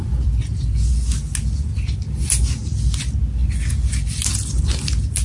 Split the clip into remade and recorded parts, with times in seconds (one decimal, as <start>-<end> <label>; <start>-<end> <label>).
0.0-0.9 remade; 0.9-5.2 recorded